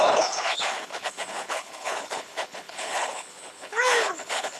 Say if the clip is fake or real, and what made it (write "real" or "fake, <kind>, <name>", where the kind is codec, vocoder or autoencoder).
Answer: fake, codec, HILCodec